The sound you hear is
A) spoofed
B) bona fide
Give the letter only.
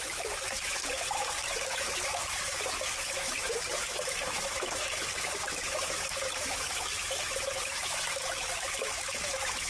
A